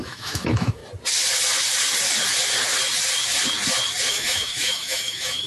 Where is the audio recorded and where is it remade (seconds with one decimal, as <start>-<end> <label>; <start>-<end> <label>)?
0.0-0.8 remade; 0.8-4.1 recorded; 4.1-5.5 remade